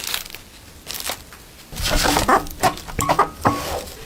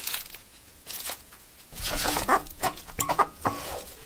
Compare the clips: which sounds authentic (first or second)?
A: first